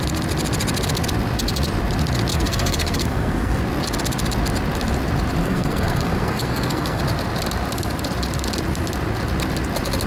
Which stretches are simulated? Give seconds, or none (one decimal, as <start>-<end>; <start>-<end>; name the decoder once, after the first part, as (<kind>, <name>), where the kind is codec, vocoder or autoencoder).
2.3-3.6 (codec, SNAC); 5.4-7.0

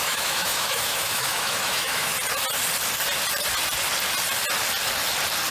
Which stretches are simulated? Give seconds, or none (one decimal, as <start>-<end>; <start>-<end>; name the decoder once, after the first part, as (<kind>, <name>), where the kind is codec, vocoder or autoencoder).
0.0-2.1 (autoencoder, DAC-VAE)

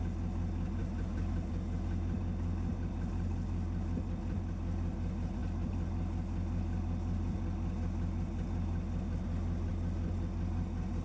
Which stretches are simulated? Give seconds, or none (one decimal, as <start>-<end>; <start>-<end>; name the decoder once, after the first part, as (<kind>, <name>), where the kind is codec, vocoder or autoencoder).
none

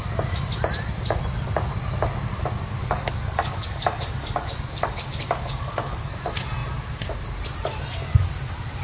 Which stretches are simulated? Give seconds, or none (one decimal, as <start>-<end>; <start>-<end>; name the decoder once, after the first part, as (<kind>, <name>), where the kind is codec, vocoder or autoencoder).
2.8-6.1 (codec, DAC)

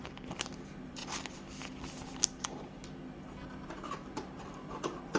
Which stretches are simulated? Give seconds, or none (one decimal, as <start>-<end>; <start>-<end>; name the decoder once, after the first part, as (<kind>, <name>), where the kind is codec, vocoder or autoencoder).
0.0-1.0 (vocoder, BigVGAN v2); 2.0-2.8; 3.7-5.2

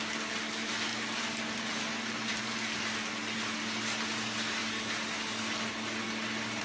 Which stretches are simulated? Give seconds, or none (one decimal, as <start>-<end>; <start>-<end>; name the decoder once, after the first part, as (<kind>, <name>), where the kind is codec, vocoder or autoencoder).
none